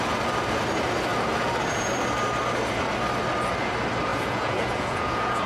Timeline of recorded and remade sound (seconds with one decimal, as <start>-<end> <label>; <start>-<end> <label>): 0.0-4.1 recorded; 4.1-5.5 remade